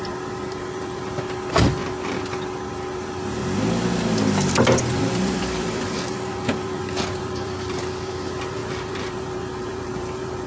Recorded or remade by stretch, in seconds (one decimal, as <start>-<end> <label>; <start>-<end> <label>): 0.0-1.8 remade; 1.8-2.7 recorded; 2.7-3.4 remade; 3.4-5.0 recorded; 5.0-10.5 remade